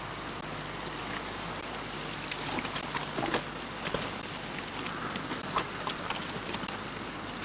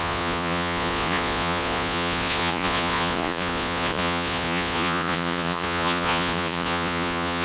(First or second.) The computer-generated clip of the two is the second